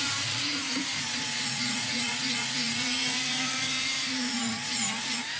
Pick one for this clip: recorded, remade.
remade